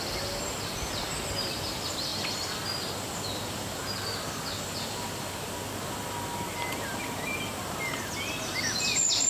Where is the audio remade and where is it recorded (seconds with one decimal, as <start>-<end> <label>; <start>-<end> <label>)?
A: 0.0-2.1 recorded; 2.1-5.3 remade; 5.3-9.3 recorded